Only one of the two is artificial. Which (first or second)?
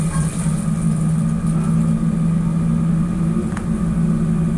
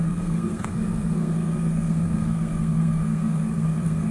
second